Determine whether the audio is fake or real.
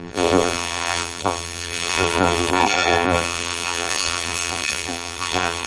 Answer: fake